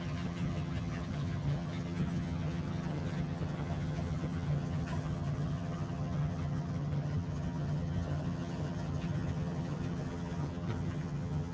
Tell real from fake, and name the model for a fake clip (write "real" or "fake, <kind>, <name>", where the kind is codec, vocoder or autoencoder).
fake, vocoder, HiFi-GAN